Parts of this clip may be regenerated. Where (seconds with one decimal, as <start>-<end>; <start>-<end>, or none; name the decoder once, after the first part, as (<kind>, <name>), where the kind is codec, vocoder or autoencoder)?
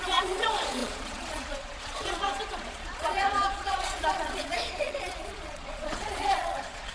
0.0-6.9 (vocoder, Vocos)